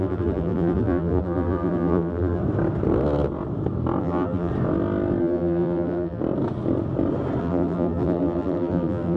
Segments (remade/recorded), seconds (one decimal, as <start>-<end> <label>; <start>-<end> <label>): 0.0-2.4 remade; 2.4-4.0 recorded; 4.0-4.5 remade; 4.5-5.2 recorded; 5.2-6.2 remade; 6.2-7.4 recorded; 7.4-9.2 remade